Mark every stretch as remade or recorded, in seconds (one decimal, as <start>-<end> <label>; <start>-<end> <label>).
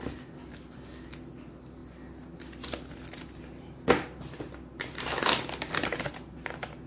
0.0-6.9 recorded